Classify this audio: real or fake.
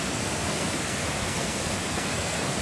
fake